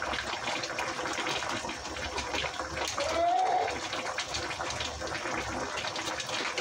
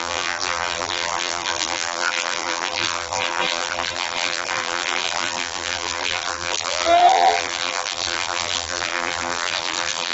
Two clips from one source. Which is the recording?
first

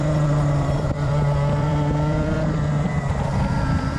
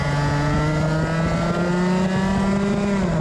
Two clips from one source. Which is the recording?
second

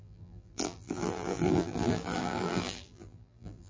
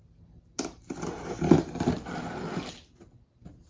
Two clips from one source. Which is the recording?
second